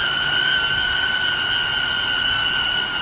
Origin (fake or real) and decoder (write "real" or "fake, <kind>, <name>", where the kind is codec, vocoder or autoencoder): real